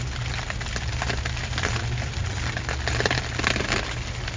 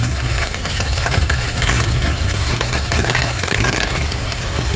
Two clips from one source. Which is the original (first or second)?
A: first